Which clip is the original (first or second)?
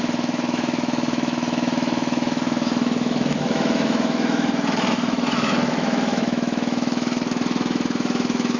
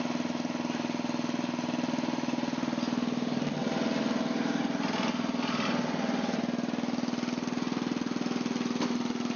second